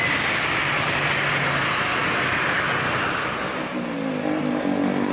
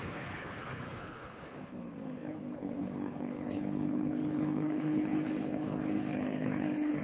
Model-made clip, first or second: second